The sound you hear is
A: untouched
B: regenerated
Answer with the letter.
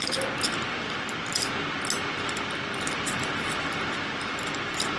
B